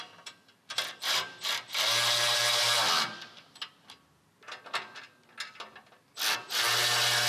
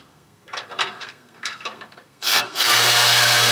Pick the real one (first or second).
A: first